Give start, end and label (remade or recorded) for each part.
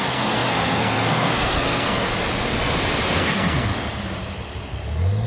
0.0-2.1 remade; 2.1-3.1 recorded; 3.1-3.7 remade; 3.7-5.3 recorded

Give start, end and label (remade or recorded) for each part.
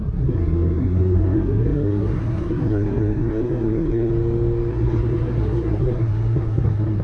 0.0-4.1 remade; 4.1-4.7 recorded; 4.7-7.0 remade